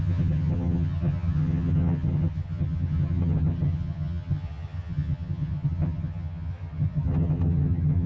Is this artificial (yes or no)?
yes